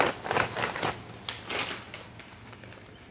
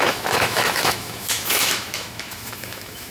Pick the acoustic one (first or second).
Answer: first